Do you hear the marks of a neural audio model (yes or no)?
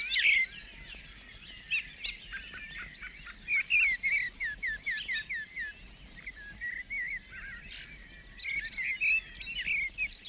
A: no